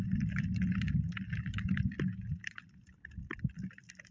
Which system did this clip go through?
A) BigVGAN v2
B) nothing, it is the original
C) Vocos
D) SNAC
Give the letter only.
B